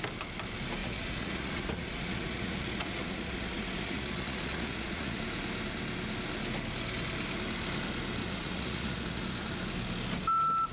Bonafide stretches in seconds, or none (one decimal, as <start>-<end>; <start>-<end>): 0.0-0.8; 5.2-8.2; 9.2-10.7